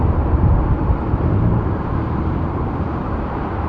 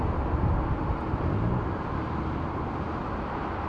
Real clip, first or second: second